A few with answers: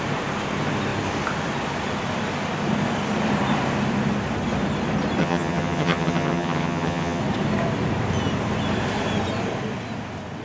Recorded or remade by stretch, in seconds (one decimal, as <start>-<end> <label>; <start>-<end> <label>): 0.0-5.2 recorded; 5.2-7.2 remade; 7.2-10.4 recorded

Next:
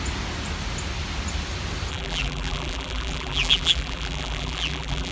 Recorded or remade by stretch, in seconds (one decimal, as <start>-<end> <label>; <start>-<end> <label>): 0.0-1.9 recorded; 1.9-5.1 remade

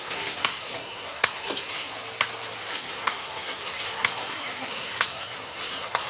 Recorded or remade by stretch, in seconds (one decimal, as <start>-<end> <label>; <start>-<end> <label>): 0.0-1.9 remade; 1.9-2.7 recorded; 2.7-6.1 remade

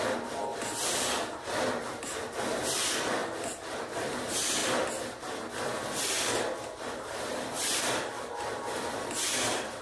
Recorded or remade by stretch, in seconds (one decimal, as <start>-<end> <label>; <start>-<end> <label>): 0.0-0.5 recorded; 0.5-2.8 remade; 2.8-4.6 recorded; 4.6-9.8 remade

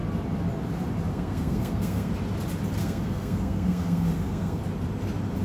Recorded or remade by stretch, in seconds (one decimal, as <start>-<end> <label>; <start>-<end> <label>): 0.0-1.1 recorded; 1.1-2.1 remade; 2.1-2.8 recorded; 2.8-4.6 remade; 4.6-5.4 recorded

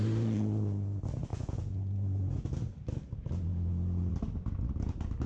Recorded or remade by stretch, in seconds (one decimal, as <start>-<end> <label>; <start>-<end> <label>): 0.0-1.3 recorded; 1.3-1.8 remade; 1.8-3.5 recorded; 3.5-4.1 remade; 4.1-5.3 recorded

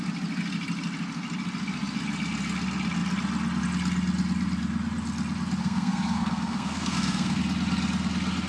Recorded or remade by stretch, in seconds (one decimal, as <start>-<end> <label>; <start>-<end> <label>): 0.0-5.6 recorded; 5.6-7.4 remade; 7.4-8.5 recorded